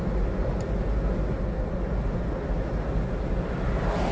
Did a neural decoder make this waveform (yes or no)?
no